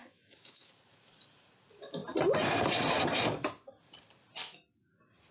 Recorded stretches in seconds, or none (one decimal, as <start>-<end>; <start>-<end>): 0.7-5.3